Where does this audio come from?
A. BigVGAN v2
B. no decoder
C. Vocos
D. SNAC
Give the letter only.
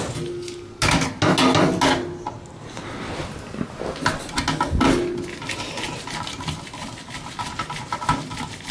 B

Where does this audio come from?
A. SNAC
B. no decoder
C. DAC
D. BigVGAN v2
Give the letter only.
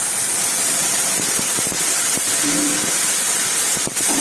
D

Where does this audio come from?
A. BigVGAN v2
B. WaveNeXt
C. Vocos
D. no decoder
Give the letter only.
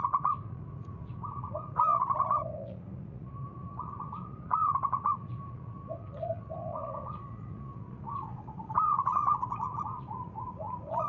C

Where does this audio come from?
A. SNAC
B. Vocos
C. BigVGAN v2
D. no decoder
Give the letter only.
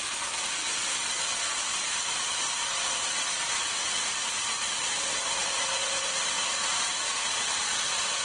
D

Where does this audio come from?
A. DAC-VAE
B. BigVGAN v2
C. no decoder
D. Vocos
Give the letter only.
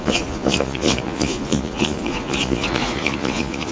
D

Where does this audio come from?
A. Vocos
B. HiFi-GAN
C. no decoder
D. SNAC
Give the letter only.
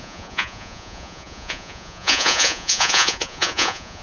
A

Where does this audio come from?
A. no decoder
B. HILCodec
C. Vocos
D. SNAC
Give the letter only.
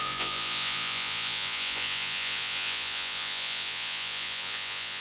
C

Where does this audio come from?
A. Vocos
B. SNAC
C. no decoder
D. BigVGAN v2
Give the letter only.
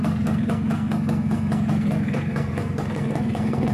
B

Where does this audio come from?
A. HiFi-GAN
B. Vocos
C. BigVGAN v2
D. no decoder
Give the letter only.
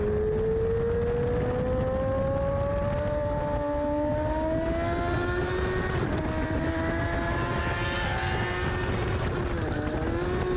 D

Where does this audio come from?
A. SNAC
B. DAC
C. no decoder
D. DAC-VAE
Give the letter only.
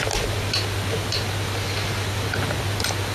C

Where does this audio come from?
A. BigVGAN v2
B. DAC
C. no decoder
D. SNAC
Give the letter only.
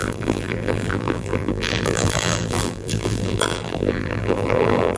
A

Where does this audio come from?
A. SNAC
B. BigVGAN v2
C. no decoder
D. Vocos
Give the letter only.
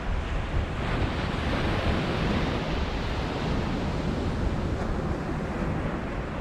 C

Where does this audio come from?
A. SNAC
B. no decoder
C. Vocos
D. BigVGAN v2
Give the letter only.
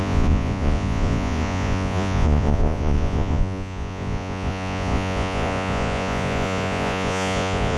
C